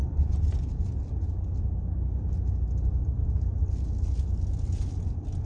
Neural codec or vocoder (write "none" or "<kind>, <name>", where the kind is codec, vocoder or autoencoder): none